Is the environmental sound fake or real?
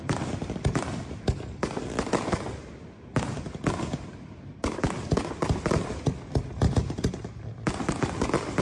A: real